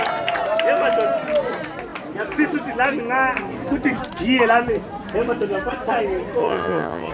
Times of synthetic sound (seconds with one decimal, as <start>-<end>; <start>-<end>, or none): 6.4-7.1